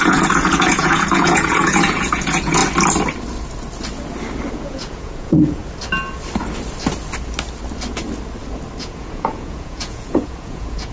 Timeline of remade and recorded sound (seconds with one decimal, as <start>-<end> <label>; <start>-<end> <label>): 0.0-2.6 remade; 2.6-4.5 recorded; 4.5-5.6 remade; 5.6-8.8 recorded; 8.8-10.9 remade